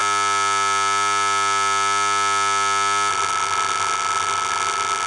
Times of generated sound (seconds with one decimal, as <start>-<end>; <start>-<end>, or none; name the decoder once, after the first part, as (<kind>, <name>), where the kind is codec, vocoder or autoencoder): 3.1-5.1 (vocoder, BigVGAN v2)